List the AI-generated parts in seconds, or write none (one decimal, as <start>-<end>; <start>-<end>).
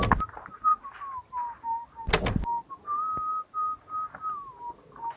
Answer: none